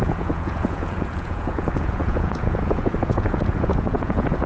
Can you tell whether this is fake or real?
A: fake